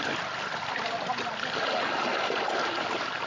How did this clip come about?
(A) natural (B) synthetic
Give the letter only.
A